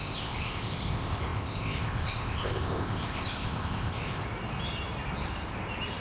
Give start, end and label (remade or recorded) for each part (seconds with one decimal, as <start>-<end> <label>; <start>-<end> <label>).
0.0-4.2 remade; 4.2-6.0 recorded